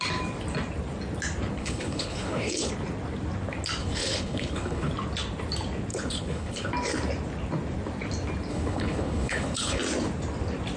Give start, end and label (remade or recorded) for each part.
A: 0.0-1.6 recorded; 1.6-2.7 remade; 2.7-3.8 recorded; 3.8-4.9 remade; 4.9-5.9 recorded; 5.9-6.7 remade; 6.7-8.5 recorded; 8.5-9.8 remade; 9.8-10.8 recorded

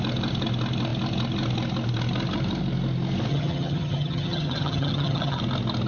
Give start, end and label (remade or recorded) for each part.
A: 0.0-3.3 recorded; 3.3-5.4 remade; 5.4-5.9 recorded

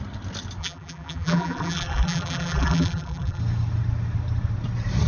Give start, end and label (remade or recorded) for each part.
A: 0.0-0.6 recorded; 0.6-3.4 remade; 3.4-5.1 recorded